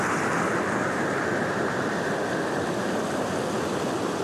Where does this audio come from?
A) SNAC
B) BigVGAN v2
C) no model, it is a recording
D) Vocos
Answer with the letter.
C